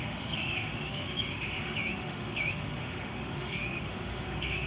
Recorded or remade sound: remade